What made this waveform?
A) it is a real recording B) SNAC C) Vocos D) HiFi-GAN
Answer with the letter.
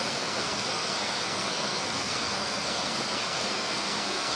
B